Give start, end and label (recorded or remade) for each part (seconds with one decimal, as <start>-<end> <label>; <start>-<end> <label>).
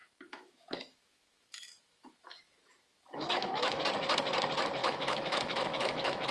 0.0-3.8 remade; 3.8-4.8 recorded; 4.8-6.3 remade